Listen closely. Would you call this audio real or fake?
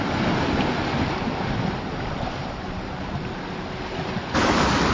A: real